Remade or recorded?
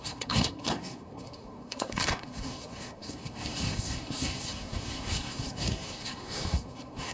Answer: remade